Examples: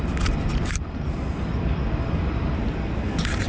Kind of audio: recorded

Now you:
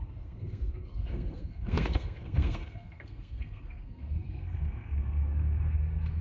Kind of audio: remade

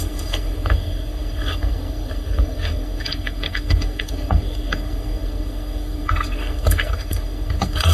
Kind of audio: remade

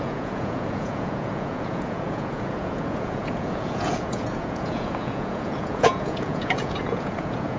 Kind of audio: remade